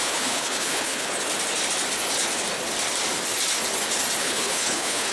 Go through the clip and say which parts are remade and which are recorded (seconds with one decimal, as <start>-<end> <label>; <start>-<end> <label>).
0.0-1.1 remade; 1.1-4.2 recorded; 4.2-5.1 remade